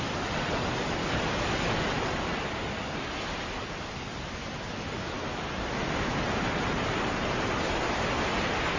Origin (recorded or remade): recorded